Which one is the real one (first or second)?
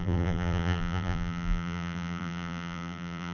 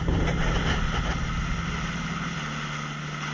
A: second